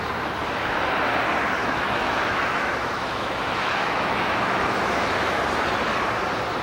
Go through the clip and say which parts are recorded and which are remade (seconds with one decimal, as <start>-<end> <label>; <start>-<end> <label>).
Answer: 0.0-1.6 recorded; 1.6-5.4 remade; 5.4-6.6 recorded